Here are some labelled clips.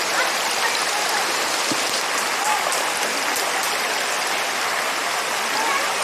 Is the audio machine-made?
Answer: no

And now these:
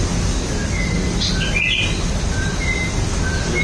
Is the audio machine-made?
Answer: no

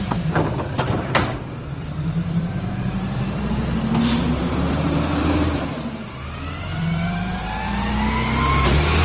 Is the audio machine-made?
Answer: yes